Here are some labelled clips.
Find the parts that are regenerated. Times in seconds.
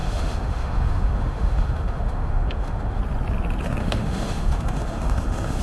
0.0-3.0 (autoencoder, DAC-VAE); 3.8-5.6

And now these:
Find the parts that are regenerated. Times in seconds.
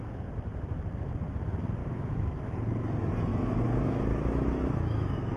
1.8-2.4 (autoencoder, DAC-VAE); 3.3-5.4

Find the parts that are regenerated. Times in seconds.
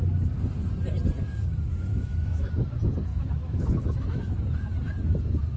1.9-2.5 (autoencoder, DAC-VAE); 3.1-4.3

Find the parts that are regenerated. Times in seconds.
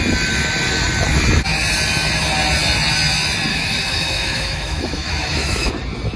3.5-5.7 (autoencoder, DAC-VAE)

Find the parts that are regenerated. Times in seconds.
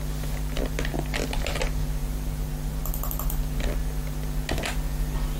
none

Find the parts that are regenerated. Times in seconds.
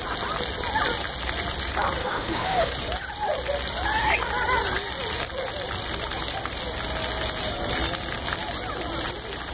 2.0-2.7 (autoencoder, DAC-VAE)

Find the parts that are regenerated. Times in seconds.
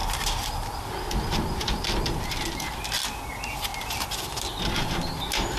none